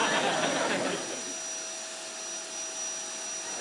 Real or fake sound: real